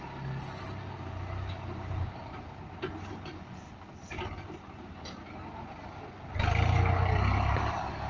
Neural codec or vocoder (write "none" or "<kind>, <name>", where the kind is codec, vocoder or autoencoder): none